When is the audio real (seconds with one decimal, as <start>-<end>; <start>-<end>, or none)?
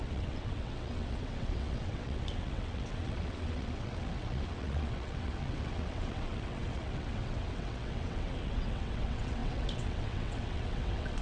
none